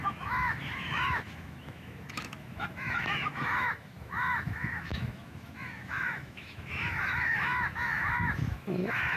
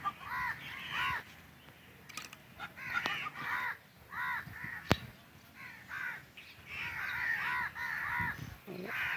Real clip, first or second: second